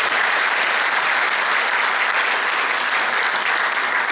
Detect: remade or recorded recorded